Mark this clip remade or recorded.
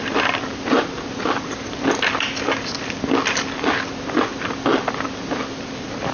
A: recorded